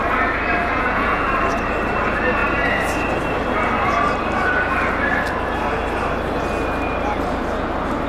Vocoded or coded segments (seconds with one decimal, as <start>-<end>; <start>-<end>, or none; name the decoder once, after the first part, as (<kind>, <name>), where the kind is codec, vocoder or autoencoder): 0.6-1.3 (vocoder, Vocos)